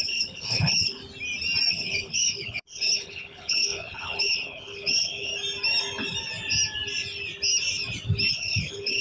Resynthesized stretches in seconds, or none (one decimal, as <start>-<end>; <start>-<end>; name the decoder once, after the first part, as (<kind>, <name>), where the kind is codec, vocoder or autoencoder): 0.0-1.0 (codec, HILCodec); 1.7-5.3; 8.3-9.0